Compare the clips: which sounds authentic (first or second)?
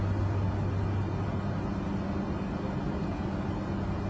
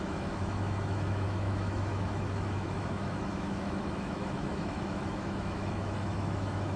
first